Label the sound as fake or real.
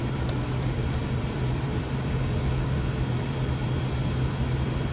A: fake